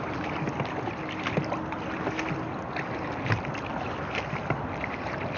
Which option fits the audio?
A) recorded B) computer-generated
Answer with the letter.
A